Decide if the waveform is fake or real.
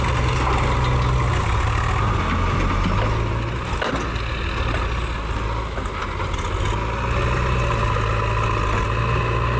real